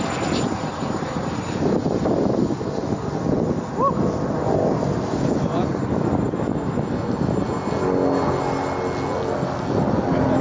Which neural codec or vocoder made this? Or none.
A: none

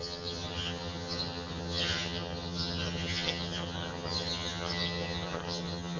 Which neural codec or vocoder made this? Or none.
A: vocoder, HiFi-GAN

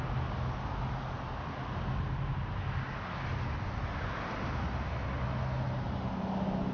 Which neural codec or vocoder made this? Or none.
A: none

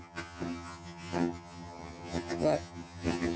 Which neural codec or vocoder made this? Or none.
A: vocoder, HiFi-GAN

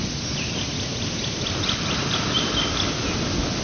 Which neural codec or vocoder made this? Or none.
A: none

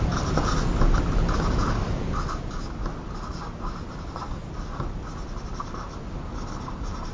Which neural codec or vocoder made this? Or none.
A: none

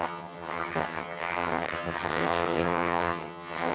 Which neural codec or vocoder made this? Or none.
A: vocoder, HiFi-GAN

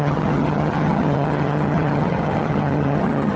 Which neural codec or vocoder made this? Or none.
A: vocoder, HiFi-GAN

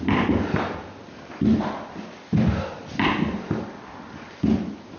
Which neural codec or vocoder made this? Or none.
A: none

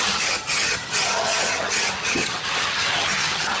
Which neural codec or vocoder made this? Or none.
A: vocoder, HiFi-GAN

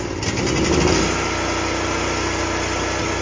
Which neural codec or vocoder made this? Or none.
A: none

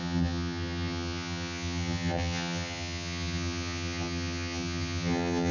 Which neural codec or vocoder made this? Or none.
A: vocoder, HiFi-GAN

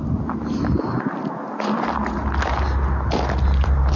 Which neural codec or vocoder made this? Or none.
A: none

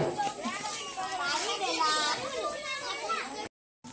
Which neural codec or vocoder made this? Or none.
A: none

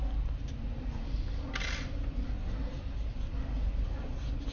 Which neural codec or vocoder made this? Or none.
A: none